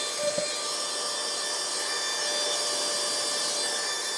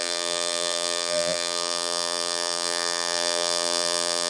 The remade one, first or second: second